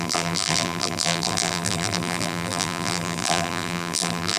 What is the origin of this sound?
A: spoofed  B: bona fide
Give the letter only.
A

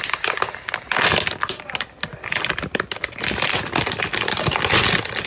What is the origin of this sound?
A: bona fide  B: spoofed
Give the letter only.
A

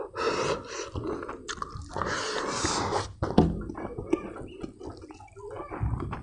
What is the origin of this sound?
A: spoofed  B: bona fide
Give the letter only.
B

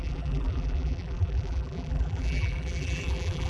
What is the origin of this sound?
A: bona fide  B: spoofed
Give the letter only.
B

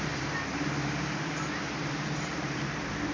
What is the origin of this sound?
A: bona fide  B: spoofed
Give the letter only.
B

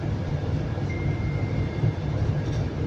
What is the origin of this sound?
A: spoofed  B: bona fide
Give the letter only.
A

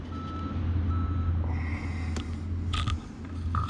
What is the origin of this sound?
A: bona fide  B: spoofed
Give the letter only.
A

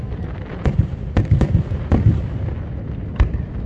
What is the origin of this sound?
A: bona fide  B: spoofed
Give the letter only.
A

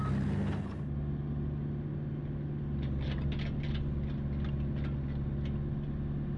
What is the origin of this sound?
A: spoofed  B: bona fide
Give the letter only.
B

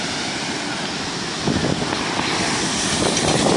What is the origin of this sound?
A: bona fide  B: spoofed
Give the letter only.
A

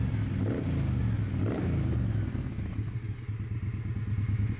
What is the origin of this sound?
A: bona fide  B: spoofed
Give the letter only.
A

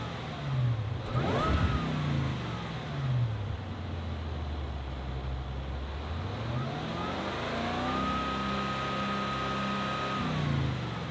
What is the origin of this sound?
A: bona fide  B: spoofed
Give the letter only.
A